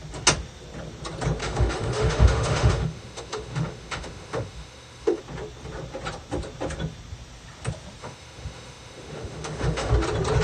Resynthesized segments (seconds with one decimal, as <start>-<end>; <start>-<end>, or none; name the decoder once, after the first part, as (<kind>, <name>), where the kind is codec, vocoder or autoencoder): 1.4-5.2 (autoencoder, DAC-VAE); 8.0-9.9